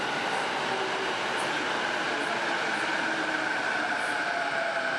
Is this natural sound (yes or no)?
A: yes